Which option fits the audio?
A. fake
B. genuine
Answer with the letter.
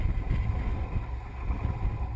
B